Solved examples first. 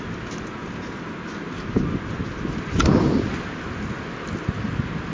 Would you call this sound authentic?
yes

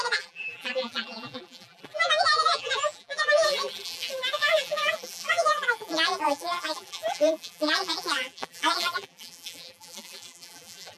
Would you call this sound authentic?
no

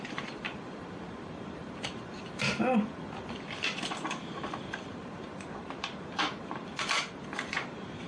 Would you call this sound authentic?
no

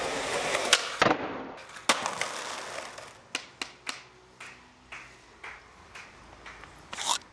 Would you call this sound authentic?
yes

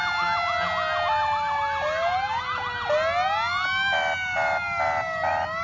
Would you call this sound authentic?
yes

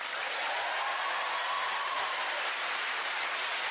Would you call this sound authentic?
no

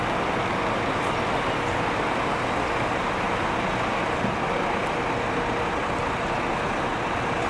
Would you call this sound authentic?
yes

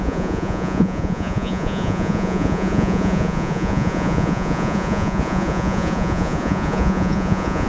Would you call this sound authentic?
no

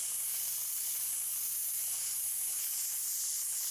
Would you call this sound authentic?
yes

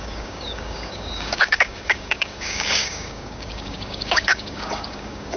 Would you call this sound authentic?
no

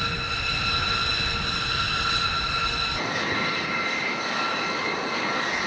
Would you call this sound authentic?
yes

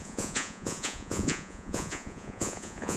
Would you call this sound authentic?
no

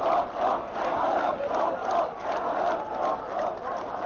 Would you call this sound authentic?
yes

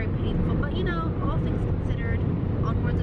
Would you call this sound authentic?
yes